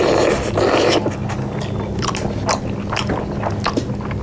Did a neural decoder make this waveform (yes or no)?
no